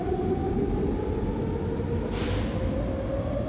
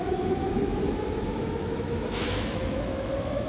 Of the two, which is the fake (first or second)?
second